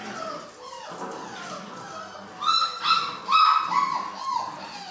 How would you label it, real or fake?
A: real